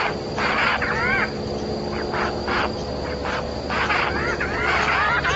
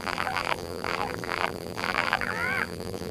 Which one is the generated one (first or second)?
second